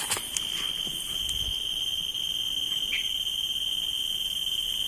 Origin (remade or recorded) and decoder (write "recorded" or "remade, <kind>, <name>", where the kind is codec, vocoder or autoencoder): recorded